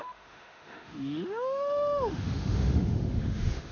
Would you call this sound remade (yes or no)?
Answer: yes